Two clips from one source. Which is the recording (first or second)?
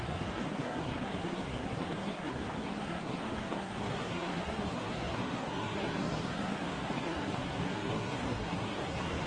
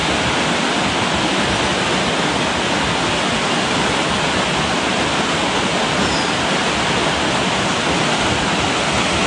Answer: second